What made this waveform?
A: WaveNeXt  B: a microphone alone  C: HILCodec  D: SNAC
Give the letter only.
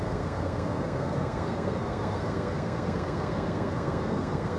D